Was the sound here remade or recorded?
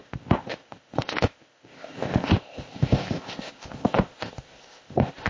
remade